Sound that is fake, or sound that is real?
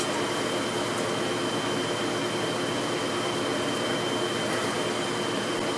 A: real